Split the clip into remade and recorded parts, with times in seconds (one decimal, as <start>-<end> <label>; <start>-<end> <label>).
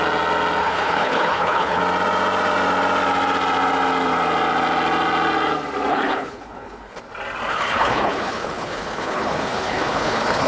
0.0-0.6 recorded; 0.6-1.8 remade; 1.8-5.9 recorded; 5.9-7.0 remade; 7.0-7.5 recorded; 7.5-10.5 remade